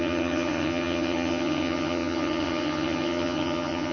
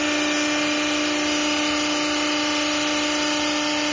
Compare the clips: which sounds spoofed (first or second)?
first